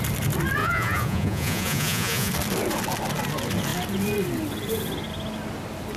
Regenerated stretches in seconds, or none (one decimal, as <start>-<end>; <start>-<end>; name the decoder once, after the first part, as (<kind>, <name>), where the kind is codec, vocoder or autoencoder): 0.6-2.3 (vocoder, Vocos)

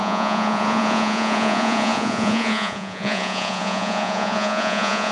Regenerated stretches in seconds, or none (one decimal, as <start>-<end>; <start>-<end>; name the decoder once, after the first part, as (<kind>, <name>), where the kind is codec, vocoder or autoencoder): 0.0-5.1 (vocoder, Vocos)

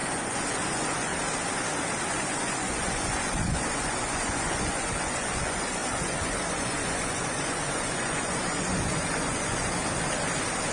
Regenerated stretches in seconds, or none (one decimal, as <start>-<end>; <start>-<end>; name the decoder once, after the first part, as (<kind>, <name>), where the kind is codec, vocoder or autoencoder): 0.0-1.1 (vocoder, Vocos); 2.1-9.8

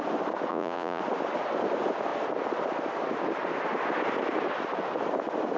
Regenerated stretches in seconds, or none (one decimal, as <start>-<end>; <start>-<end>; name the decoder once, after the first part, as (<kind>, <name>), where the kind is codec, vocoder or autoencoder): 0.5-1.0 (vocoder, Vocos)